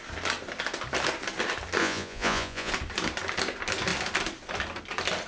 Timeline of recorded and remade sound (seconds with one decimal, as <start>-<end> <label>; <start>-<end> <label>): 0.0-1.8 recorded; 1.8-2.7 remade; 2.7-5.3 recorded